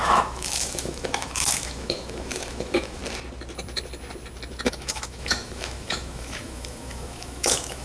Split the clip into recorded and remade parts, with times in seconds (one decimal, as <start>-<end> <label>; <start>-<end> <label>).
0.0-3.0 remade; 3.0-4.7 recorded; 4.7-7.8 remade